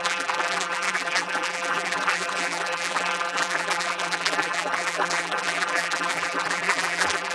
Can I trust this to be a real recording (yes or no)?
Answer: no